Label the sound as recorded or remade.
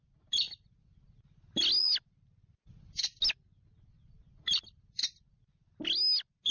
recorded